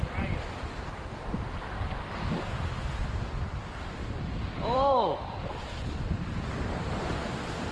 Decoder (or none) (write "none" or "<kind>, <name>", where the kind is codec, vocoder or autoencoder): vocoder, BigVGAN v2